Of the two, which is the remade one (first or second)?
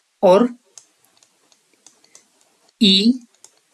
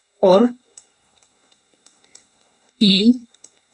second